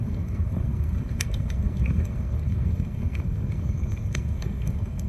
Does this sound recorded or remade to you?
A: remade